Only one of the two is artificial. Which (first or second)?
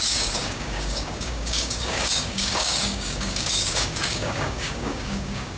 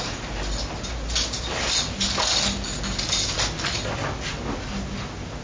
first